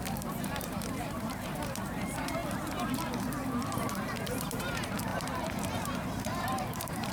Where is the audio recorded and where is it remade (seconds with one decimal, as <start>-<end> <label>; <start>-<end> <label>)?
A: 0.0-7.1 remade